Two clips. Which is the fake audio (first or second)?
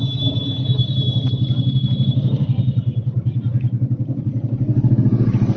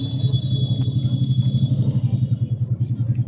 first